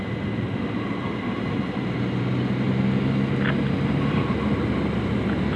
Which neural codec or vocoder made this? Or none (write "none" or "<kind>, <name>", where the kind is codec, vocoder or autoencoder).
none